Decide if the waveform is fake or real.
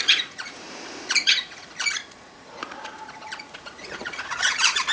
fake